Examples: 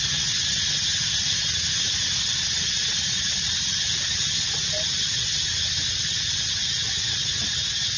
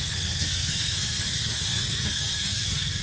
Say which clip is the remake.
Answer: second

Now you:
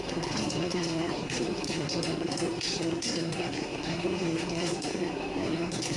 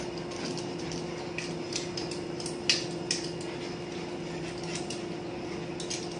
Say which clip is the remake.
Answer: first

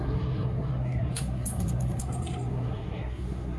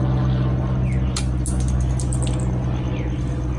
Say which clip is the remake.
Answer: first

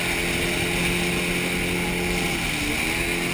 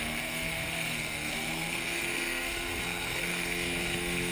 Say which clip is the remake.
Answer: second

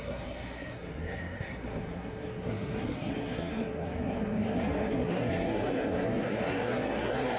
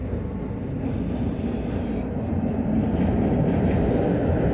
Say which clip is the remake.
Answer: first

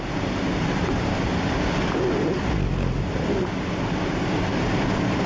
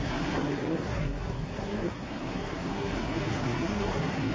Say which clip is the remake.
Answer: second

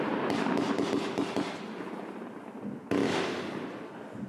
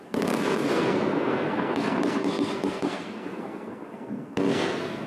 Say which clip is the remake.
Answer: second